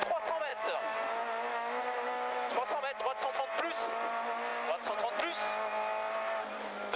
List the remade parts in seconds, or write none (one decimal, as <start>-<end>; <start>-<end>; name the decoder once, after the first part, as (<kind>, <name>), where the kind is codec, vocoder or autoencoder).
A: 0.5-1.1 (autoencoder, DAC-VAE); 1.5-2.5